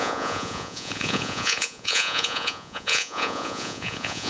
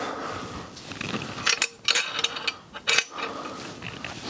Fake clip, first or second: first